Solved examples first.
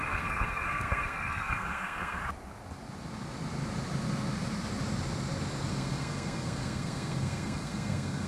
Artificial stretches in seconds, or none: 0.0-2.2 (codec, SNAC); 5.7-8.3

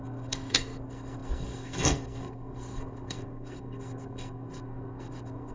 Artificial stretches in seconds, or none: 0.0-5.5 (codec, SNAC)

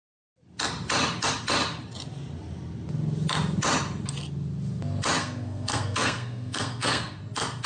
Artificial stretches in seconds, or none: 5.2-7.2 (codec, SNAC)

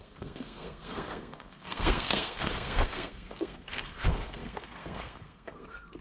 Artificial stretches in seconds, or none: 0.0-6.0 (codec, SNAC)

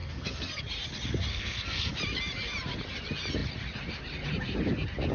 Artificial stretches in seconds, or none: 0.0-0.6 (codec, SNAC); 1.3-1.9

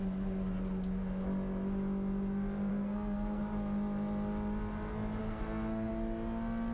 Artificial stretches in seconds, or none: 2.7-3.4 (codec, SNAC); 5.2-5.9